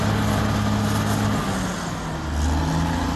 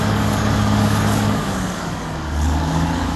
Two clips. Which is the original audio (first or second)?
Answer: first